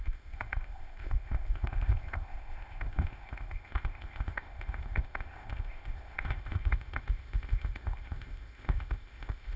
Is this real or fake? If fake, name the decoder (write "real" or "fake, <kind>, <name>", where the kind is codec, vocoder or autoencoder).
fake, codec, ZipCodec